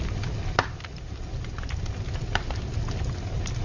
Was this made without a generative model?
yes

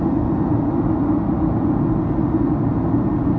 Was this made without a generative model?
yes